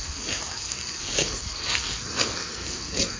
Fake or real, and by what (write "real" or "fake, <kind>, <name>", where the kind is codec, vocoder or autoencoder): fake, codec, SNAC